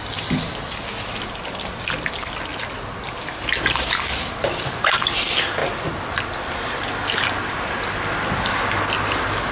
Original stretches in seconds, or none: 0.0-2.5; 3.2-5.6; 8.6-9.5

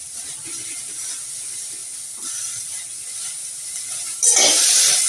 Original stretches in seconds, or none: 0.0-5.1

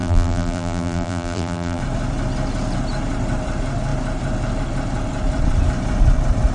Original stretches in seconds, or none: 1.8-6.5

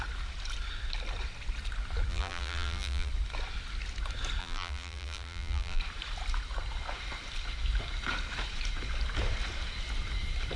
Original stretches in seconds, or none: 0.0-2.1; 3.1-4.4; 5.8-10.6

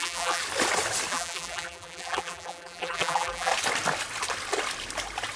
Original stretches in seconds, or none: 0.4-1.1; 3.5-5.4

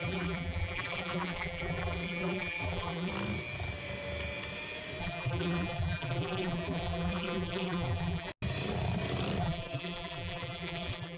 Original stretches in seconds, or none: 3.1-5.0; 8.3-9.4

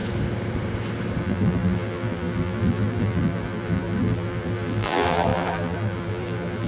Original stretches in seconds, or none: 0.0-1.2

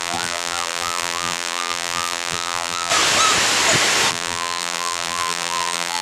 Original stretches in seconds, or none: 2.9-4.1